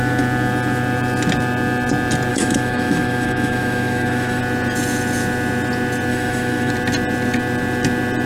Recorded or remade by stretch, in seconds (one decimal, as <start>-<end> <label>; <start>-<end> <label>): 0.0-2.3 recorded; 2.3-4.4 remade; 4.4-6.1 recorded; 6.1-6.7 remade; 6.7-8.3 recorded